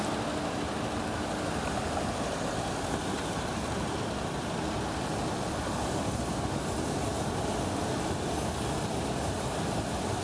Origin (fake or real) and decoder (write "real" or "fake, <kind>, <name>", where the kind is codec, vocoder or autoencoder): real